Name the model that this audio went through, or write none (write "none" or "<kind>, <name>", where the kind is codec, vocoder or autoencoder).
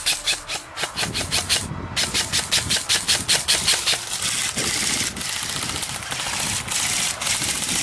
none